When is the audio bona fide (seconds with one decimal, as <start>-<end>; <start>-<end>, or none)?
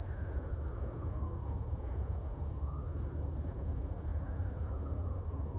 none